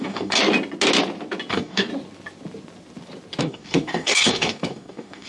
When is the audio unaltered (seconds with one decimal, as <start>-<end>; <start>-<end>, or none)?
0.4-1.5; 1.9-3.4